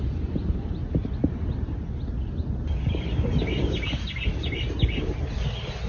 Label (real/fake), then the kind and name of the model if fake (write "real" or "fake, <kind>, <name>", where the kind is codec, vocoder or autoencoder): real